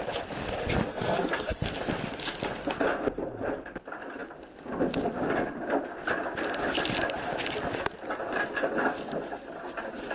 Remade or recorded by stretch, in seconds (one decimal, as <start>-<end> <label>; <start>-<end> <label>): 0.0-0.9 recorded; 0.9-1.6 remade; 1.6-10.1 recorded